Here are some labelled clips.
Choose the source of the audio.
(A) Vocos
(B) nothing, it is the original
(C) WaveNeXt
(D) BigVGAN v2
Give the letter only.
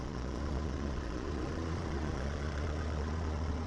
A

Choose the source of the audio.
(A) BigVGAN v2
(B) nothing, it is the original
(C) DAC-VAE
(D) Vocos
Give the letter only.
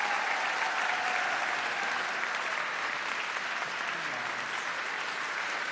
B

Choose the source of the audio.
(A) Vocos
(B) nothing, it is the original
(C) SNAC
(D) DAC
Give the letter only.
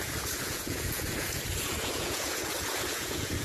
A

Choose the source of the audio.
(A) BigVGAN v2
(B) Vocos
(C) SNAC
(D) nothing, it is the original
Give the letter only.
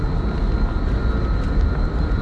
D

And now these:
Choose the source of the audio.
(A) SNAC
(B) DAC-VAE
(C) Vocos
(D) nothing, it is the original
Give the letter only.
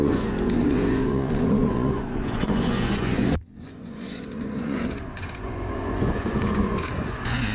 C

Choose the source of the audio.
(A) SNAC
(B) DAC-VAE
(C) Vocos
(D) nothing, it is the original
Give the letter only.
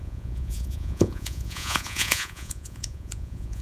C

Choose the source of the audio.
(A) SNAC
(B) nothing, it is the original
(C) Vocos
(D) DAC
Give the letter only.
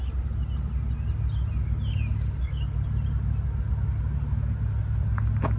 B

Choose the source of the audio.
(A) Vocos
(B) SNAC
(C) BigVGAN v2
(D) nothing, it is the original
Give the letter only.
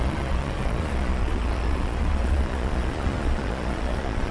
A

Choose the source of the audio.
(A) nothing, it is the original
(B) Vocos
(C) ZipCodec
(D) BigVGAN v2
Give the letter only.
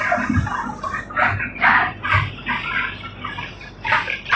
A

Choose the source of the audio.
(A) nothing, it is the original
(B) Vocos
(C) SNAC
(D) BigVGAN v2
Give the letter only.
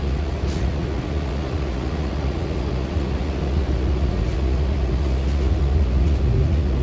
B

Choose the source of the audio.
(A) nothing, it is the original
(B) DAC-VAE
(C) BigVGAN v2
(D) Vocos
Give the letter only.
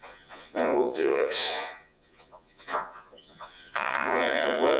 D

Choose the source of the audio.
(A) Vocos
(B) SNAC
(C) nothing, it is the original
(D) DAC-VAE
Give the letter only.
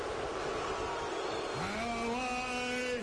C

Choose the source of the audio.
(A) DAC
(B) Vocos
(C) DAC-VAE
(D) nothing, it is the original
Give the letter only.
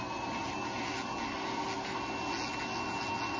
D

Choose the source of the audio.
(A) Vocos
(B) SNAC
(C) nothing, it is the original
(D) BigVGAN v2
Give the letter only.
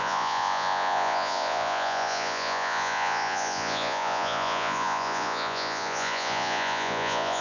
A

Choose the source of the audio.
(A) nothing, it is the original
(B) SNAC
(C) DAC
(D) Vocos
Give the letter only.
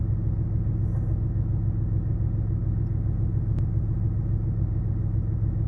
A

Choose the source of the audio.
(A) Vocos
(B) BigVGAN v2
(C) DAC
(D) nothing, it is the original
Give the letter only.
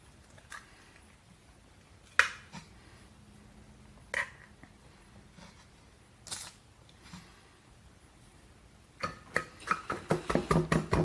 D